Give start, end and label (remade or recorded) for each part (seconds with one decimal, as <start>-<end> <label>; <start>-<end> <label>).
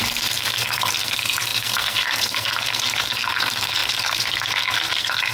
0.0-5.3 remade